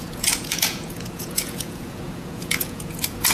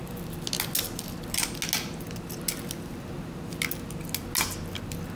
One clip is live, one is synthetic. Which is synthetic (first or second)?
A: first